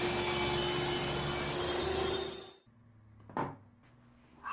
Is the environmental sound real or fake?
real